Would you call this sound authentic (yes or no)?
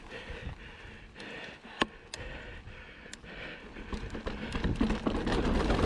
yes